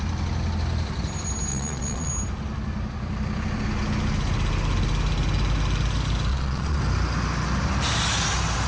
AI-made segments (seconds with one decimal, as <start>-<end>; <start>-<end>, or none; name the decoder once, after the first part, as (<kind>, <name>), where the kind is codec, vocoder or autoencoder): 1.5-2.1 (vocoder, Vocos); 6.3-6.8